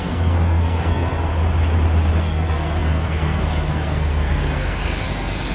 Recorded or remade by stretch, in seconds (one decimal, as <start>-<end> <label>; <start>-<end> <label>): 0.0-1.3 remade; 1.3-2.2 recorded; 2.2-5.5 remade